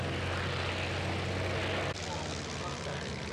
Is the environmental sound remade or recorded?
recorded